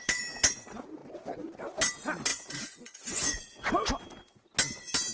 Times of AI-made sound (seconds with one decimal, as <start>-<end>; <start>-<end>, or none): 2.3-3.7

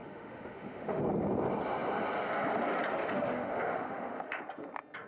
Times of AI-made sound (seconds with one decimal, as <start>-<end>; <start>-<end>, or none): 0.0-1.0; 3.0-4.4